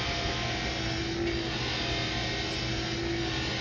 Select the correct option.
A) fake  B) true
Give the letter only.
B